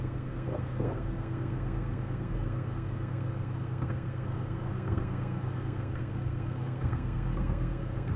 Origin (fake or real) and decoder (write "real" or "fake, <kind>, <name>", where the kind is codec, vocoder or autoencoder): fake, codec, SNAC